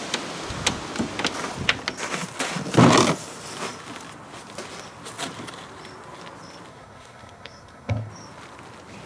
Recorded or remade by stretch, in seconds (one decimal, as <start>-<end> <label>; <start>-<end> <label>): 0.0-6.7 recorded; 6.7-8.1 remade; 8.1-9.1 recorded